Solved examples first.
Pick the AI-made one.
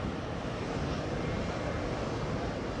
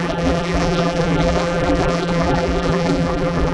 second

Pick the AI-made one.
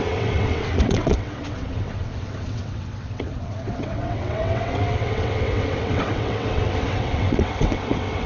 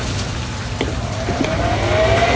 first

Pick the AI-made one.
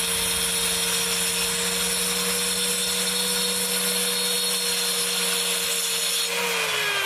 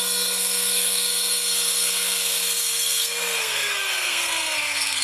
second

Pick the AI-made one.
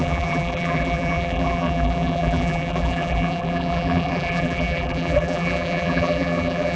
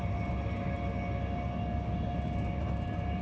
first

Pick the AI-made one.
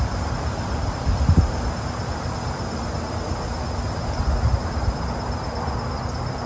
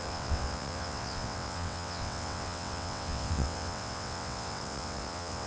second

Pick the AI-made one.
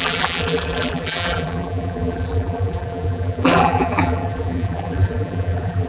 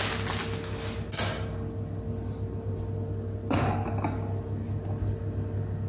first